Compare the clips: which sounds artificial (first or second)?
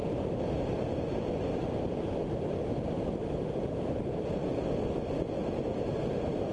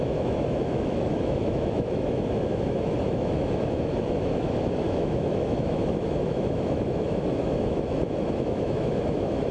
second